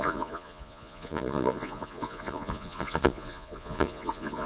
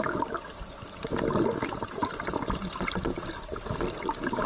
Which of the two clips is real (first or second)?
second